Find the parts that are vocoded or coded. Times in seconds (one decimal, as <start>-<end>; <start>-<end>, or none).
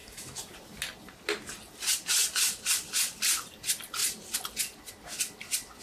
0.0-0.5